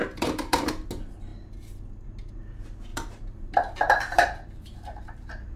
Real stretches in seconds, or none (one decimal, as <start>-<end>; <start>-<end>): 0.7-2.9